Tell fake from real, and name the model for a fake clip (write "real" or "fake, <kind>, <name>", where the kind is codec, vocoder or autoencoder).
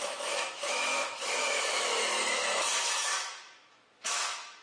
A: fake, autoencoder, DAC-VAE